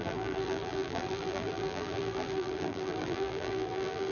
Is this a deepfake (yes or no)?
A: yes